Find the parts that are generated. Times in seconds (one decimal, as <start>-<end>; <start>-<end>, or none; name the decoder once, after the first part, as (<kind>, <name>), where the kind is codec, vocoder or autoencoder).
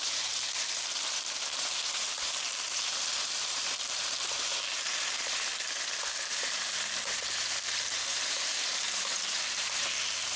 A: 0.0-5.5 (vocoder, BigVGAN v2); 6.3-10.4